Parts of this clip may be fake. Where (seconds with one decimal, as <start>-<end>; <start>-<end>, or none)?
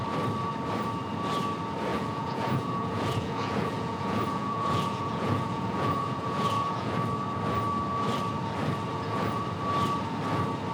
1.9-6.9; 8.9-9.4